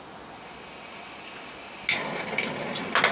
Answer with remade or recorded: recorded